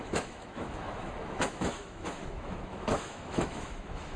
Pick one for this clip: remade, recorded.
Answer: remade